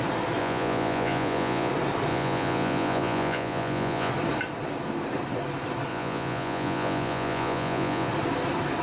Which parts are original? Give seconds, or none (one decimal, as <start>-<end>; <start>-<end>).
0.0-0.4; 1.7-2.1; 4.1-5.9; 8.1-8.8